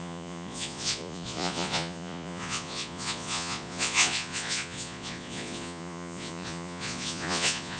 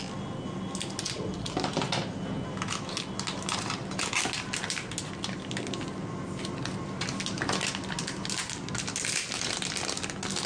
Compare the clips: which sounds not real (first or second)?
first